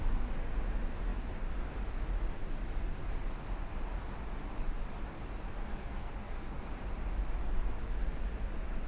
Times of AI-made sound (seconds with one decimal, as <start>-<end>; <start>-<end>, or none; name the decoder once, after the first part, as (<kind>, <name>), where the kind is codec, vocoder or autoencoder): 5.7-6.7 (codec, SNAC)